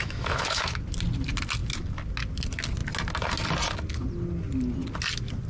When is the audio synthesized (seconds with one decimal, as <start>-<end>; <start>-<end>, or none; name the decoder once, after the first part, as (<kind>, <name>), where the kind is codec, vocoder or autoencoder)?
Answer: 0.0-0.8 (autoencoder, DAC-VAE)